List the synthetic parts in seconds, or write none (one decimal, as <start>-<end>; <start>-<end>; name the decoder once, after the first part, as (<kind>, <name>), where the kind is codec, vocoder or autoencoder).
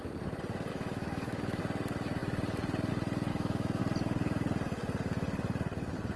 0.7-1.6 (autoencoder, DAC-VAE); 3.3-3.8